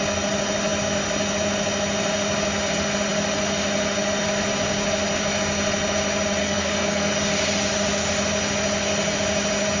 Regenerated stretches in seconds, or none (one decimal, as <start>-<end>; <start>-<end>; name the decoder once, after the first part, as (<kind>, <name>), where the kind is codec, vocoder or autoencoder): 6.4-7.1 (codec, SNAC)